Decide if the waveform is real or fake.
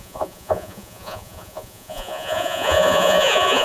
fake